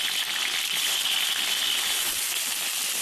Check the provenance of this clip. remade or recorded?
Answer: recorded